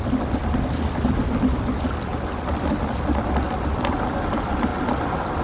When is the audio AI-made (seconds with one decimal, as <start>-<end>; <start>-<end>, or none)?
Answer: none

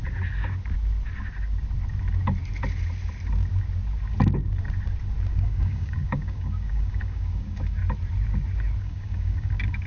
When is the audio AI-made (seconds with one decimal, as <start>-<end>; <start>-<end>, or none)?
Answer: 5.3-7.8; 8.8-9.9

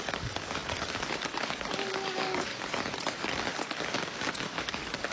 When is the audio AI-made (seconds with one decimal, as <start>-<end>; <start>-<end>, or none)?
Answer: 0.0-2.5; 3.1-5.1

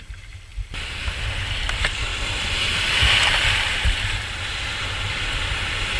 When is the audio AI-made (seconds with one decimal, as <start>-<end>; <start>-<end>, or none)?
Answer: none

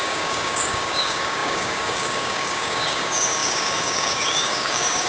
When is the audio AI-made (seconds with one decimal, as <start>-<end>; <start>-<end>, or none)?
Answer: 0.0-5.1